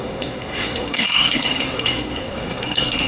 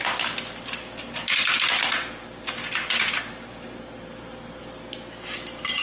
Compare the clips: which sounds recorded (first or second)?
second